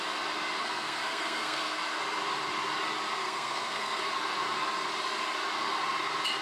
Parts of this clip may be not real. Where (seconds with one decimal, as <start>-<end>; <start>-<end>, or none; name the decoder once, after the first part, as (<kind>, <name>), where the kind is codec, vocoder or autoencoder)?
0.6-1.8 (codec, SNAC); 3.2-4.0